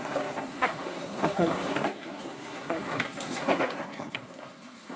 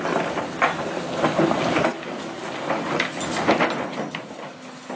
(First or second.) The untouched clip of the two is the second